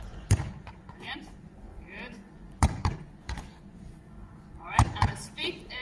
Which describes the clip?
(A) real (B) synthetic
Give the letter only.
B